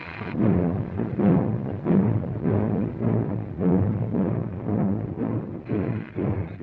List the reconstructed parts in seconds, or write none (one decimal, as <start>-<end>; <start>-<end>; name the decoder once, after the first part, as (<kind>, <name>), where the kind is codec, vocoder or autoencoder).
0.0-6.6 (vocoder, Vocos)